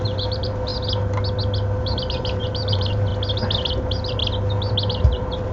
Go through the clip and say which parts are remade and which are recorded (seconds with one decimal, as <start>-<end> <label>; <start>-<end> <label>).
0.0-0.7 remade; 0.7-1.8 recorded; 1.8-3.1 remade; 3.1-3.7 recorded; 3.7-4.2 remade; 4.2-4.9 recorded; 4.9-5.5 remade